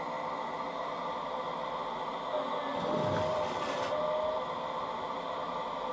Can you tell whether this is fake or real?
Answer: real